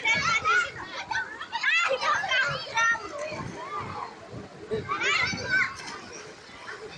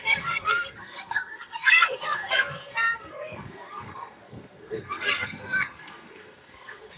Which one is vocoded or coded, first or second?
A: second